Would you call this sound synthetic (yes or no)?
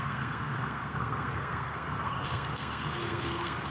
yes